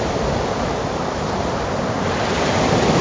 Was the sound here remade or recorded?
recorded